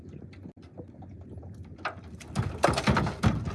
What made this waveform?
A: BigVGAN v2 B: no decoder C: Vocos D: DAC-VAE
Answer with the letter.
B